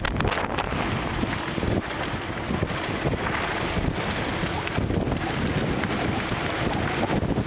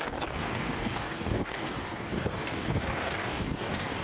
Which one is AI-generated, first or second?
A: second